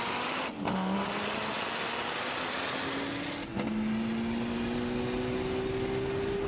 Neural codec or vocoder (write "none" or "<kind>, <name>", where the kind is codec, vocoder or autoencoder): none